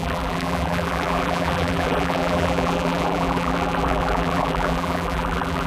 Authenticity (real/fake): fake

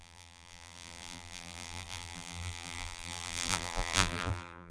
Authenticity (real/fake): fake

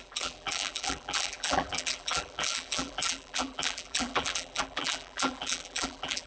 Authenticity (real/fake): fake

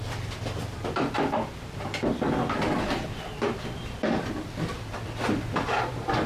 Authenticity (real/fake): fake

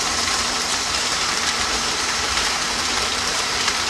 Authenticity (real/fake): fake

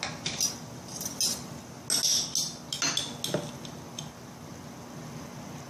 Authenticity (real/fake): real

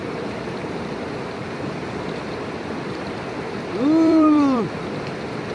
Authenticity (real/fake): fake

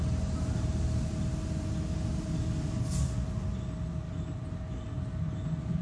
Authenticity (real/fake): real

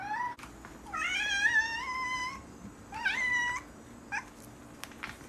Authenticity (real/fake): real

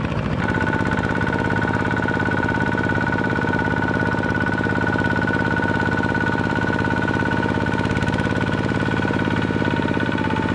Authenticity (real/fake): fake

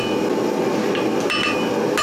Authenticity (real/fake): real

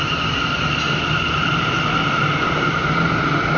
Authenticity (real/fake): fake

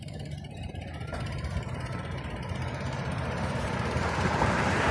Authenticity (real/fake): fake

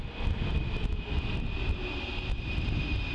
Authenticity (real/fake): real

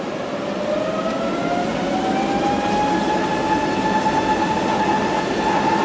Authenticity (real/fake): real